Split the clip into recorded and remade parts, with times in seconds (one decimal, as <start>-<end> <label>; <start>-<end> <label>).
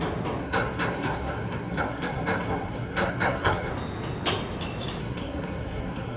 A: 0.0-0.4 recorded; 0.4-3.7 remade; 3.7-5.0 recorded; 5.0-6.2 remade